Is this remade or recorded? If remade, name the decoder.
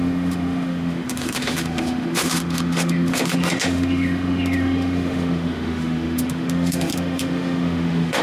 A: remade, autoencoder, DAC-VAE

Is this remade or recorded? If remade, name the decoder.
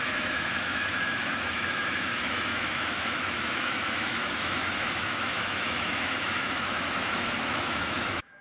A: remade, autoencoder, DAC-VAE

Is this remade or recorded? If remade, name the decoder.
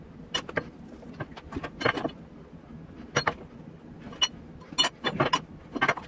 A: recorded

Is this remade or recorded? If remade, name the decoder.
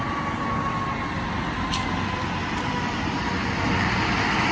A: recorded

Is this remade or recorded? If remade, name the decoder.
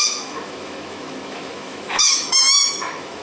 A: remade, autoencoder, DAC-VAE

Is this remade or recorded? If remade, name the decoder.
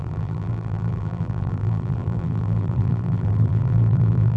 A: remade, vocoder, BigVGAN v2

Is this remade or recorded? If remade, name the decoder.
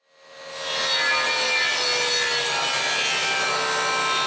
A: recorded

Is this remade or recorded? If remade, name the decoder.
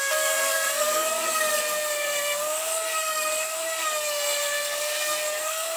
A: remade, codec, SNAC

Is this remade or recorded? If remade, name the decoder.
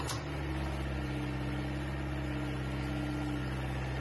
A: recorded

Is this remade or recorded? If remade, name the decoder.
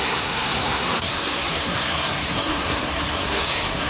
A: remade, codec, SNAC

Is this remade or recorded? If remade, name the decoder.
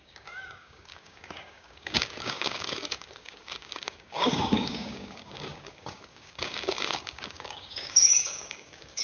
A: remade, codec, DAC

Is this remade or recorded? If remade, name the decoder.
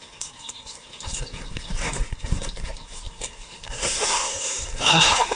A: remade, codec, SNAC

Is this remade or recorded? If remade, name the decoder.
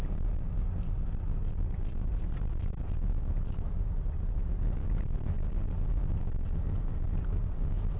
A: recorded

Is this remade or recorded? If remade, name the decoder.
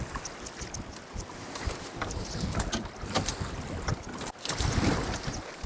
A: recorded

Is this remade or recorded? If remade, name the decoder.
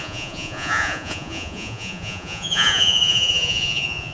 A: remade, vocoder, Vocos